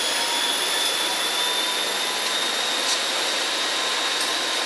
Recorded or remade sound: recorded